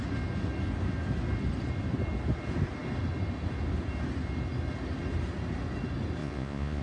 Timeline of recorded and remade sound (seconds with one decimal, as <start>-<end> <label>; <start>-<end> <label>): 0.0-6.2 recorded; 6.2-6.8 remade